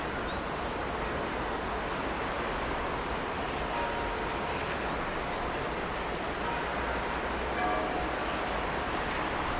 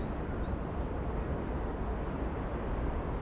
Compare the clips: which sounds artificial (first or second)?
second